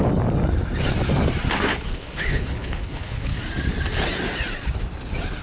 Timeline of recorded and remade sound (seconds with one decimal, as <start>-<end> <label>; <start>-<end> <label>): 0.0-1.7 recorded; 1.7-3.4 remade; 3.4-5.4 recorded